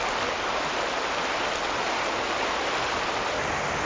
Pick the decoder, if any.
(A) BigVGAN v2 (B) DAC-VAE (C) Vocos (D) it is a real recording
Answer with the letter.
D